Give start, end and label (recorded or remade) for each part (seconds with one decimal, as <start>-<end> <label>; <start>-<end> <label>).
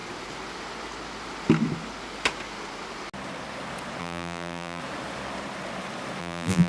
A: 0.0-4.0 recorded; 4.0-4.8 remade; 4.8-6.2 recorded; 6.2-6.7 remade